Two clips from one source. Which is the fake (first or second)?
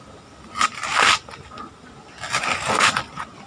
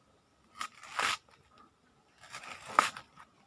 second